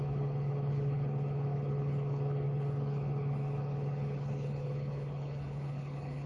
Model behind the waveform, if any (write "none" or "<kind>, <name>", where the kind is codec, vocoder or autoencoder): codec, HILCodec